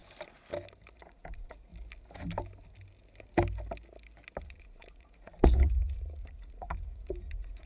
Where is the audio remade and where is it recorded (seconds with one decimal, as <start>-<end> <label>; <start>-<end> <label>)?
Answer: 0.0-1.0 recorded; 1.0-1.7 remade; 1.7-4.4 recorded; 4.4-7.7 remade

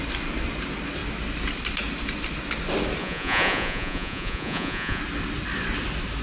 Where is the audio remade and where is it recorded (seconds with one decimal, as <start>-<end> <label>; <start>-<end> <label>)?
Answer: 0.0-3.0 recorded; 3.0-5.0 remade; 5.0-6.2 recorded

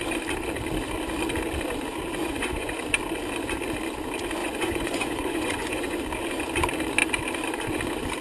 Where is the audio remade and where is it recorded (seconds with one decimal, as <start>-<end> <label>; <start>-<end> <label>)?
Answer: 0.0-2.2 recorded; 2.2-2.8 remade; 2.8-4.4 recorded; 4.4-6.0 remade; 6.0-8.2 recorded

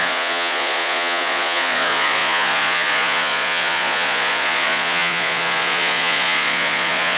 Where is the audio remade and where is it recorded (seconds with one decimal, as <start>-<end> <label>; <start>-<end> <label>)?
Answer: 0.0-7.2 remade